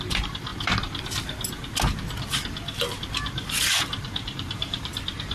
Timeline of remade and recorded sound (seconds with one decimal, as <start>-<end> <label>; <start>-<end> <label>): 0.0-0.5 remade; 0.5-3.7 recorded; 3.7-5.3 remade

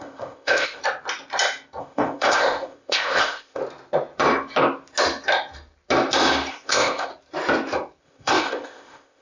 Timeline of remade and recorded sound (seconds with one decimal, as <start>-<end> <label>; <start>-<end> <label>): 0.0-0.8 remade; 0.8-1.8 recorded; 1.8-3.6 remade; 3.6-6.5 recorded; 6.5-7.1 remade; 7.1-8.0 recorded; 8.0-9.2 remade

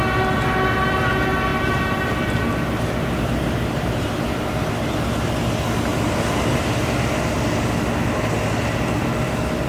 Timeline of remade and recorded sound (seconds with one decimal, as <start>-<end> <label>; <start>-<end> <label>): 0.0-1.5 recorded; 1.5-4.7 remade; 4.7-5.9 recorded; 5.9-6.6 remade; 6.6-9.7 recorded

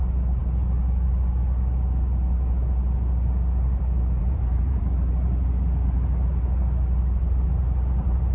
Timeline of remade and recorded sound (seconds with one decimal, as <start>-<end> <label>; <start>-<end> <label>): 0.0-4.2 recorded; 4.2-4.8 remade; 4.8-8.3 recorded

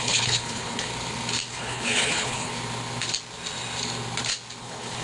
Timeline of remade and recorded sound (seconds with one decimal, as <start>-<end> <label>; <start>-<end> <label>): 0.0-0.9 remade; 0.9-1.5 recorded; 1.5-2.5 remade; 2.5-4.6 recorded; 4.6-5.0 remade

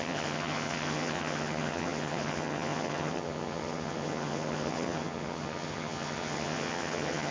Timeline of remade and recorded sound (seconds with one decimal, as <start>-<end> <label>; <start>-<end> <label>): 0.0-7.3 remade

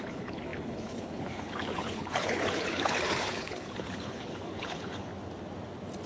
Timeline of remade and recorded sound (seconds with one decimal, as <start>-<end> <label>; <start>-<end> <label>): 0.0-5.1 remade; 5.1-6.1 recorded